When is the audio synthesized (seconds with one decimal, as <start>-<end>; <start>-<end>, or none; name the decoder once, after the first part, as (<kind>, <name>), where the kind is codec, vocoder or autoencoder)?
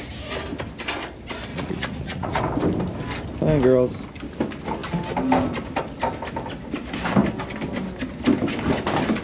1.5-2.4 (vocoder, Vocos)